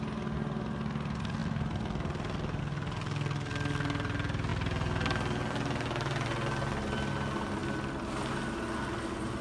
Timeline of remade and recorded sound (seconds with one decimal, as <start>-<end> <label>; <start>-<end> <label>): 0.0-9.4 recorded

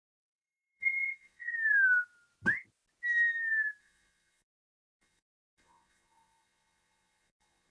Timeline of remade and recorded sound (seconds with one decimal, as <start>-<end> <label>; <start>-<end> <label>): 0.0-1.5 remade; 1.5-3.8 recorded; 3.8-7.7 remade

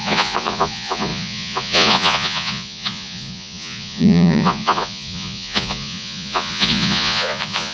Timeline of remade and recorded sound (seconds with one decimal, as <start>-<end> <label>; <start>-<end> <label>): 0.0-7.7 remade

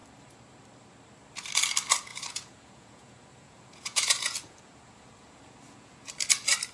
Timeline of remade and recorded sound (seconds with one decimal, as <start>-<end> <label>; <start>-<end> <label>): 0.0-2.1 recorded; 2.1-6.1 remade; 6.1-6.7 recorded

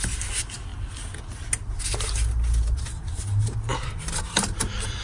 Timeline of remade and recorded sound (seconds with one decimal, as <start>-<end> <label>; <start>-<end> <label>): 0.0-5.0 recorded

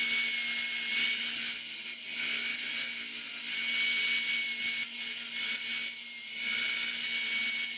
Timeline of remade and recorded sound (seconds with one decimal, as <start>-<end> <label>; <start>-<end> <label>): 0.0-7.8 recorded

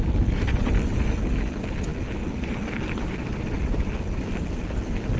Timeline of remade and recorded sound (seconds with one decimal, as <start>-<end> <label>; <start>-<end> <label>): 0.0-5.2 recorded